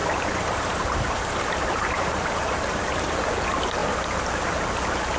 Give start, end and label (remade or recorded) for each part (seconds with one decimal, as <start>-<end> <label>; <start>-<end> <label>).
0.0-3.1 remade; 3.1-5.2 recorded